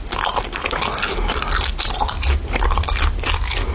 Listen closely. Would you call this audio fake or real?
real